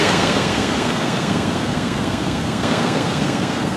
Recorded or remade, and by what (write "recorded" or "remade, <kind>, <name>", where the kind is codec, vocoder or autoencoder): remade, codec, SNAC